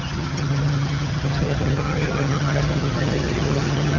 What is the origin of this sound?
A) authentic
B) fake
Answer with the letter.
B